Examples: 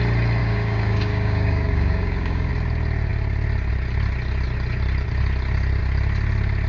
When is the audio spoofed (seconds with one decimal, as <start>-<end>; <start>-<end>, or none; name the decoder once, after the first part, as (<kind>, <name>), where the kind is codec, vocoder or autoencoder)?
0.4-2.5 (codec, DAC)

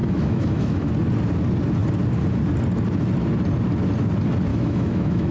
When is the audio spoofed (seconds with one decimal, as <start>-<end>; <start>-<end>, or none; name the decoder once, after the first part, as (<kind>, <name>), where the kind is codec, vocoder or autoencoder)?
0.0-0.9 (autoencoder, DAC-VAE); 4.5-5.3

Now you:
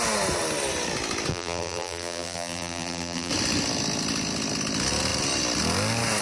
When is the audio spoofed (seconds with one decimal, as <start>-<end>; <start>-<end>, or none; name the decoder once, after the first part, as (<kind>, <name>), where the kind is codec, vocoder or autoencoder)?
1.3-3.3 (vocoder, BigVGAN v2)